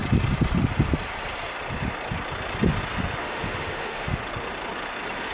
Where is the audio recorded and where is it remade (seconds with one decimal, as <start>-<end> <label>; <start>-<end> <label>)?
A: 0.0-3.2 recorded; 3.2-4.2 remade; 4.2-5.3 recorded